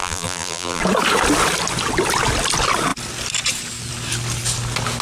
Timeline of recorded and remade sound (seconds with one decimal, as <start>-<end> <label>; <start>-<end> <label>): 0.0-0.8 remade; 0.8-5.0 recorded

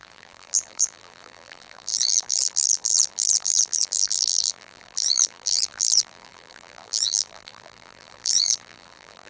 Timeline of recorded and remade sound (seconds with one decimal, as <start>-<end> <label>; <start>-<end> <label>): 0.0-9.3 remade

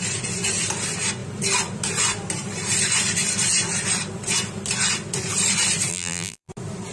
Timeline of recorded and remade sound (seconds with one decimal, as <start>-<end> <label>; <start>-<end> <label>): 0.0-5.9 recorded; 5.9-6.5 remade; 6.5-6.9 recorded

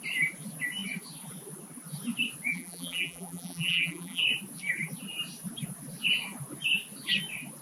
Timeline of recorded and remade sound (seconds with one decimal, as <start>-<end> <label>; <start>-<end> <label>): 0.0-2.5 recorded; 2.5-4.2 remade; 4.2-7.6 recorded

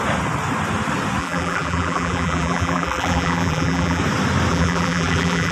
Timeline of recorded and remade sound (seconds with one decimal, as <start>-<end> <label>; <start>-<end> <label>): 0.0-1.2 recorded; 1.2-4.0 remade; 4.0-4.5 recorded; 4.5-5.5 remade

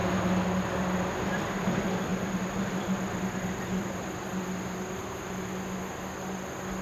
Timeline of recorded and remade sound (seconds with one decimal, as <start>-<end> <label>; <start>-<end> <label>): 0.0-6.8 recorded